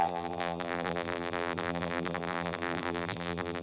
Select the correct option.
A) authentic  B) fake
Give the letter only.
B